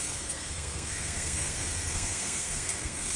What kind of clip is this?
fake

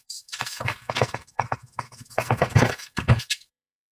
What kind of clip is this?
fake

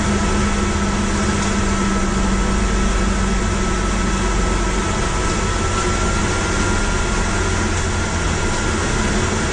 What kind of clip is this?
real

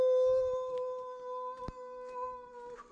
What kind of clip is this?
real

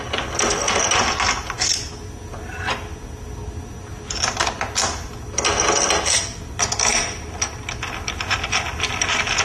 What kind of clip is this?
real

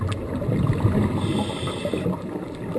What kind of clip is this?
real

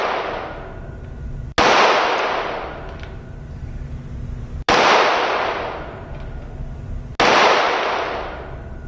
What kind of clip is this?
real